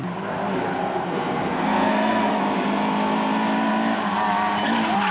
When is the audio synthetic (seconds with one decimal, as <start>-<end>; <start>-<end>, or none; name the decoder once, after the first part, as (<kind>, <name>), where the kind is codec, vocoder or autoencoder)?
0.8-2.4 (codec, SNAC)